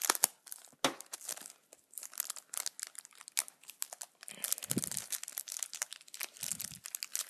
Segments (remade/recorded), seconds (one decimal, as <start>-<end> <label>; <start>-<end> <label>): 0.0-7.3 recorded